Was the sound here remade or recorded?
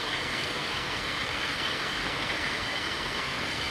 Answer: remade